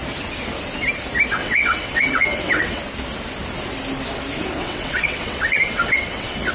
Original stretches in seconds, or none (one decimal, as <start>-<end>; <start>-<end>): 0.0-1.4; 2.8-4.6

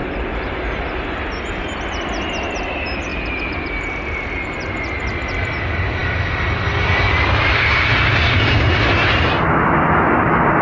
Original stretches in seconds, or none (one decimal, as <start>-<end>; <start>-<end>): 0.0-10.6

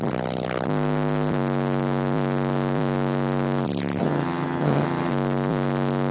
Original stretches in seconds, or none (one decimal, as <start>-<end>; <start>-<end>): 0.0-4.0; 5.1-6.1